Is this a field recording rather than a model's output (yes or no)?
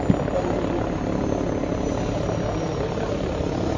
yes